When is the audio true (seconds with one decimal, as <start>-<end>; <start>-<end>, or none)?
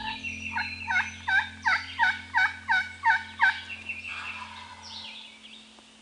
0.0-6.0